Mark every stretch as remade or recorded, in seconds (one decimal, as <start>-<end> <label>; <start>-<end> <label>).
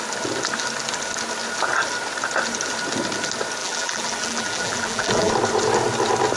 0.0-3.6 recorded; 3.6-5.3 remade; 5.3-6.4 recorded